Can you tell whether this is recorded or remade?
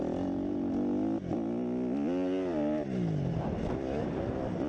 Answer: recorded